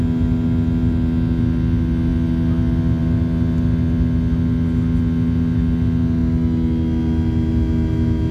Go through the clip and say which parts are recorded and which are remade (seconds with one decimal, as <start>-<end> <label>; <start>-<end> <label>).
0.0-8.3 recorded